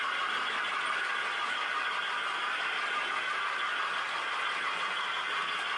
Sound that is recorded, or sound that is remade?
recorded